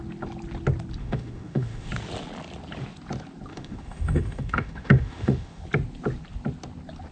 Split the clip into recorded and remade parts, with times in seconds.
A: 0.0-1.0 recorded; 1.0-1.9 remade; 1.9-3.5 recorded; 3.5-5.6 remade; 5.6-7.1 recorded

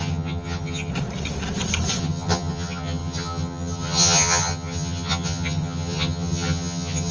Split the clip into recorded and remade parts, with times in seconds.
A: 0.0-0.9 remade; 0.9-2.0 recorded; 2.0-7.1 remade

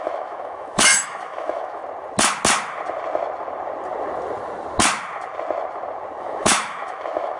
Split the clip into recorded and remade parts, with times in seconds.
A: 0.0-1.8 remade; 1.8-6.2 recorded; 6.2-7.4 remade

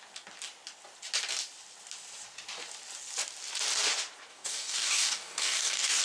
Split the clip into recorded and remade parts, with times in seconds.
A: 0.0-4.3 recorded; 4.3-6.0 remade

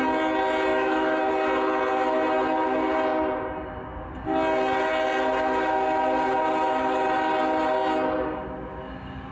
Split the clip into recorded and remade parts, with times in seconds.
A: 0.0-0.7 recorded; 0.7-1.3 remade; 1.3-9.3 recorded

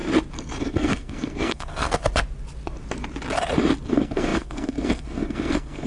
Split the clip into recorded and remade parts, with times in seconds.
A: 0.0-0.6 recorded; 0.6-2.0 remade; 2.0-3.9 recorded; 3.9-5.9 remade

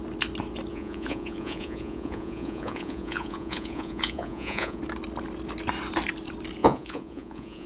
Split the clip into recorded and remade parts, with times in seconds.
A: 0.0-0.7 recorded; 0.7-4.8 remade; 4.8-6.6 recorded; 6.6-7.7 remade